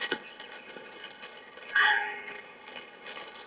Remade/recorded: remade